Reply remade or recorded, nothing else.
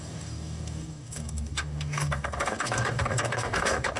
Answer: remade